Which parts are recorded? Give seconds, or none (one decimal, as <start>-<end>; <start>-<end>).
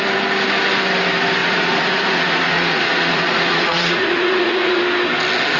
0.0-1.4; 4.8-5.6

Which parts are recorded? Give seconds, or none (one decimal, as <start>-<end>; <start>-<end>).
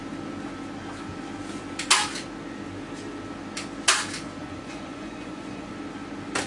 0.0-4.4; 5.7-6.5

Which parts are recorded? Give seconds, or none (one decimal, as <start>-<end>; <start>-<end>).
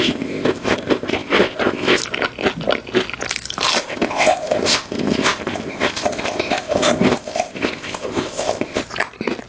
2.0-3.8; 8.8-9.5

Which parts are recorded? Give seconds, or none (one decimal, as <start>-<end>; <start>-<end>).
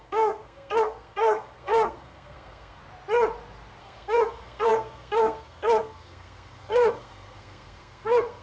2.8-3.8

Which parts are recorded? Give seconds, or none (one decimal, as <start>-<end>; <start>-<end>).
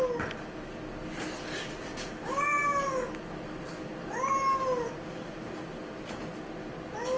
0.0-7.2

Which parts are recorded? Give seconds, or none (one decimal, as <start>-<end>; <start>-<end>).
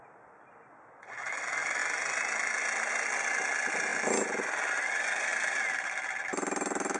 0.0-7.0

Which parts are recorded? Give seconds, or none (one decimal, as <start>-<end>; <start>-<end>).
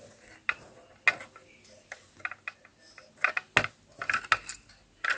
0.0-5.2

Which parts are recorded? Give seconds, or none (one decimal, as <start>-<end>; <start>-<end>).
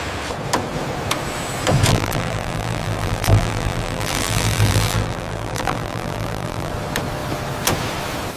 0.0-1.9; 6.7-8.4